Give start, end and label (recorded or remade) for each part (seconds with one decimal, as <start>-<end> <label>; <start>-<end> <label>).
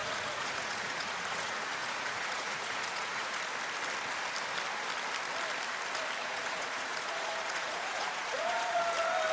0.0-3.4 remade; 3.4-6.2 recorded; 6.2-8.8 remade; 8.8-9.3 recorded